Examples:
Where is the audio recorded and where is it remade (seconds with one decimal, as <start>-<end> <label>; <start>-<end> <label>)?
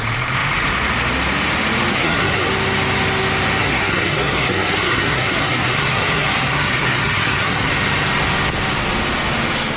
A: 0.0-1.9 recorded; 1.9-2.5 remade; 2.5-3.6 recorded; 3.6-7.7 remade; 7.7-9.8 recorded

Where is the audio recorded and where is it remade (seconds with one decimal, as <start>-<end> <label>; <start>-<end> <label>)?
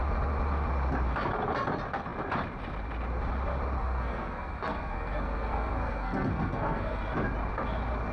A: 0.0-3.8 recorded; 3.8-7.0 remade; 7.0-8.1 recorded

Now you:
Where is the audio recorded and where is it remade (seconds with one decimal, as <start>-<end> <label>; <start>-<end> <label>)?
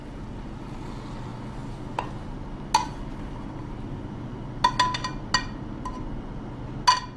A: 0.0-7.2 recorded